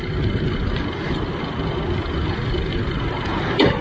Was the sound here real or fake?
real